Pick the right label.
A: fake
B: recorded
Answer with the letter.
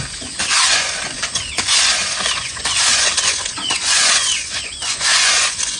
A